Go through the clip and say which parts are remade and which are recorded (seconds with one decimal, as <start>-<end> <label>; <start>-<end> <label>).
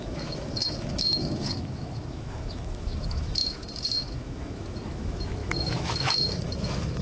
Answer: 0.0-7.0 remade